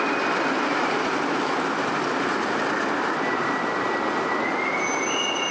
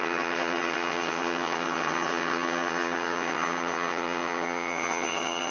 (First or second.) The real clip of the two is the first